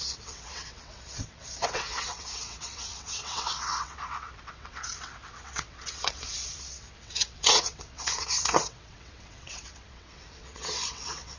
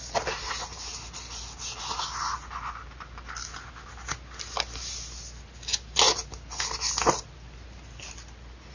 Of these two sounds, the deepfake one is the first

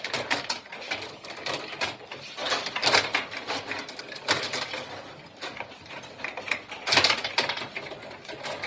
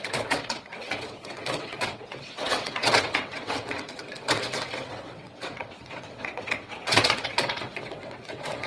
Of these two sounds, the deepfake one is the second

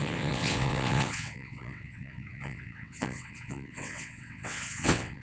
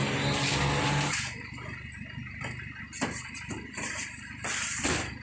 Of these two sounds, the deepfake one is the first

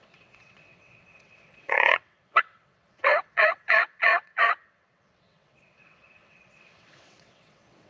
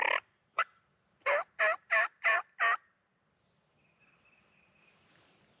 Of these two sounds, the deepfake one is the first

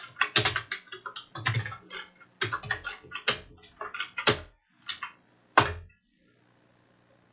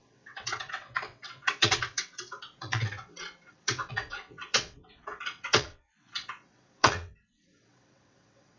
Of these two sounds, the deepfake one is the second